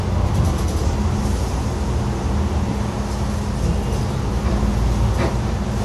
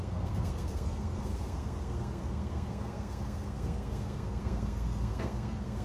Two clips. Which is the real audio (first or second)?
first